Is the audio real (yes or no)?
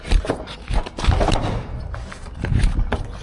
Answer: yes